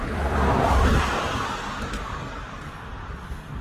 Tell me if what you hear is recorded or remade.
remade